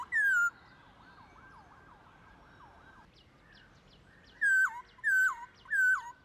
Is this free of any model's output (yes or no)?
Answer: yes